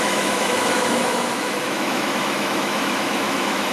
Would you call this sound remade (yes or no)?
yes